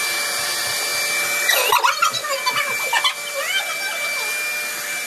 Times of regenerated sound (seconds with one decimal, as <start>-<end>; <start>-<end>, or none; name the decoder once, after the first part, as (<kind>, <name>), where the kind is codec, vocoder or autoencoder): none